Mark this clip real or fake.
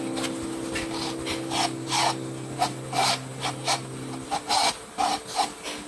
real